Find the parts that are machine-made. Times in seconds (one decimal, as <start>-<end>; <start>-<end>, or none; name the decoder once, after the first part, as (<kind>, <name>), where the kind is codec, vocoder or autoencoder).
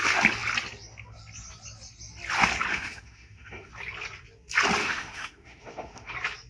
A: 2.7-3.7 (autoencoder, DAC-VAE); 4.8-6.1